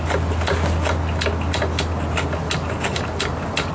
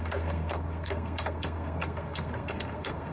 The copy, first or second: second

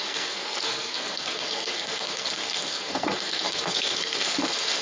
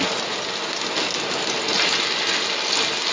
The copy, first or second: first